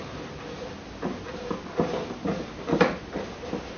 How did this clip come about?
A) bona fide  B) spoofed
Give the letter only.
A